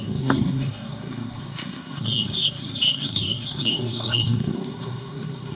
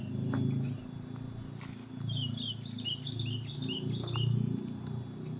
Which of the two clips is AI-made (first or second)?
first